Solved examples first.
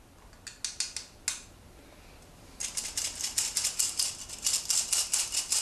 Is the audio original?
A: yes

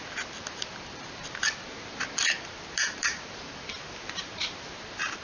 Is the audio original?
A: no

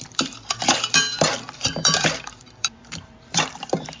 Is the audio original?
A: no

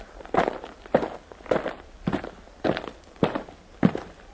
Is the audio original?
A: no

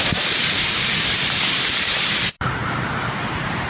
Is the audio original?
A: no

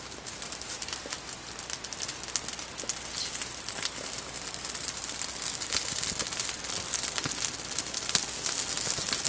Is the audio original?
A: yes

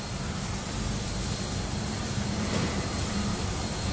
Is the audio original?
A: yes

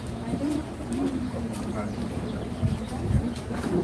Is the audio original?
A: no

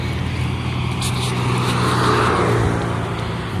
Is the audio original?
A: yes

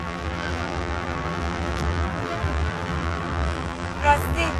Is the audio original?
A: no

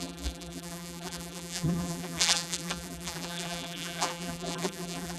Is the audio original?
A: no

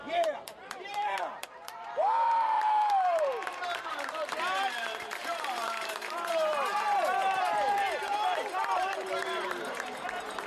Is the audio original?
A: no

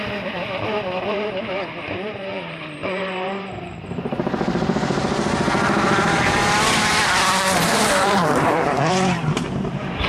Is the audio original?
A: no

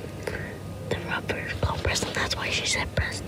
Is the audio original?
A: yes